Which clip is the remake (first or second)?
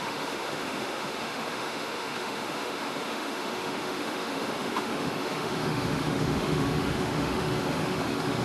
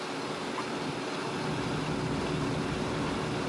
first